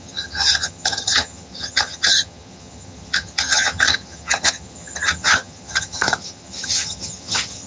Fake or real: fake